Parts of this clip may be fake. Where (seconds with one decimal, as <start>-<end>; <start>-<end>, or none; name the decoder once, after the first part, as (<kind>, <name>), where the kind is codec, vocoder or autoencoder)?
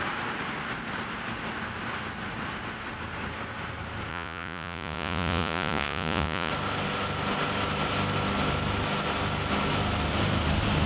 4.1-6.5 (vocoder, Vocos)